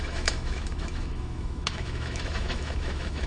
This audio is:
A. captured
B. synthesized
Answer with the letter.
B